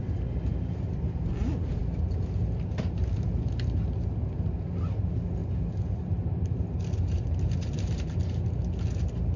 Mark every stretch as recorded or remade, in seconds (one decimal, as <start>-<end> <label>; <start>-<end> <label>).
0.0-5.4 recorded; 5.4-8.1 remade; 8.1-9.4 recorded